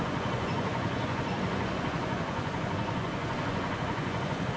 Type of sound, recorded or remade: remade